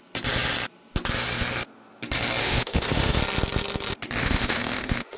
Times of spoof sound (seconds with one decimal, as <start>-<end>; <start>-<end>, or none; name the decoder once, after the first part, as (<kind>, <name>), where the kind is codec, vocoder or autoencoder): 2.4-3.2 (autoencoder, DAC-VAE); 4.2-5.2